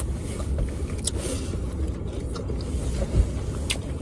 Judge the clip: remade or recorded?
recorded